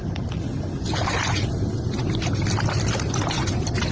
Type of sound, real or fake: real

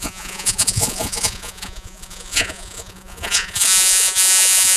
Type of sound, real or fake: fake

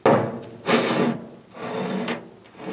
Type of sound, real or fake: real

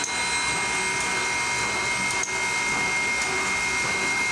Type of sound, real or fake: real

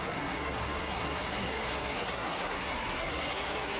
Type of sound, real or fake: fake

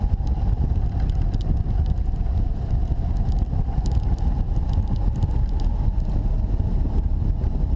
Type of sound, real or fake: real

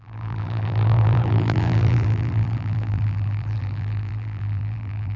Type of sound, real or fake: fake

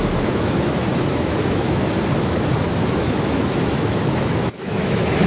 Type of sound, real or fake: fake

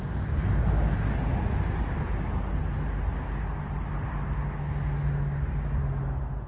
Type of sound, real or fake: real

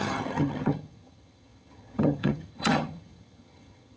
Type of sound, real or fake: fake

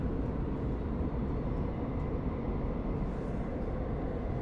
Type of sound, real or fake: real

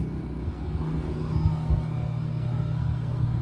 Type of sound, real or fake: fake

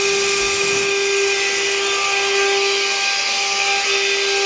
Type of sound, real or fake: real